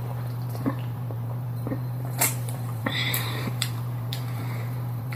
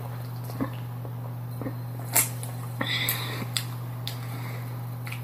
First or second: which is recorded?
second